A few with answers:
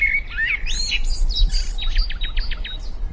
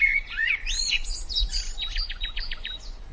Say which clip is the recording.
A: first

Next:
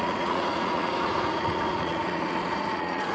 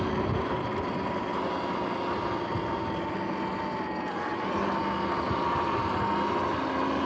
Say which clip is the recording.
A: second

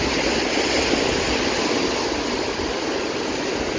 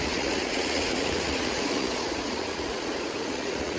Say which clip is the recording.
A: first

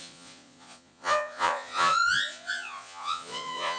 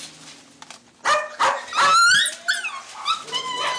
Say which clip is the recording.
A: second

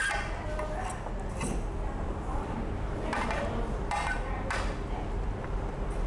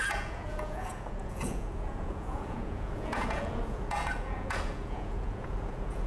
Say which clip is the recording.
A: first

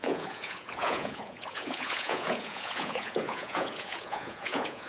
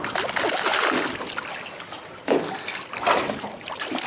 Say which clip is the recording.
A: second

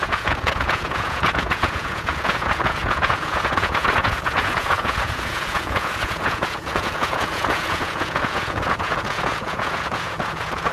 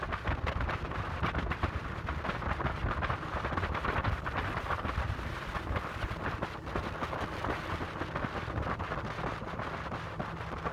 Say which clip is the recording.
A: second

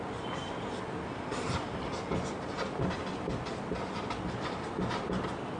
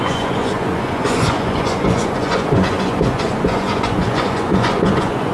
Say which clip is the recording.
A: first